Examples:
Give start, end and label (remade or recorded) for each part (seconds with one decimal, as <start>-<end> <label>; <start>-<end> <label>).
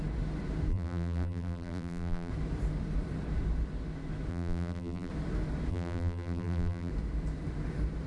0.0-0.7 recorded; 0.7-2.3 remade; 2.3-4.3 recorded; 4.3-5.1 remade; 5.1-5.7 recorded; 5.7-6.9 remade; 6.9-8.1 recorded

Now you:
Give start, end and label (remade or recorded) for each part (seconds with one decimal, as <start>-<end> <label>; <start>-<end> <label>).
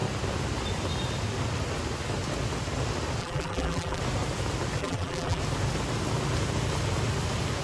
0.0-3.2 recorded; 3.2-4.0 remade; 4.0-4.8 recorded; 4.8-5.4 remade; 5.4-7.6 recorded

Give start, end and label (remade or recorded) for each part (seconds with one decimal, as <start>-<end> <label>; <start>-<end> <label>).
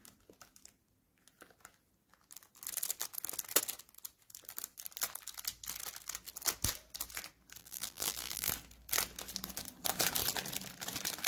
0.0-7.6 recorded; 7.6-8.5 remade; 8.5-11.3 recorded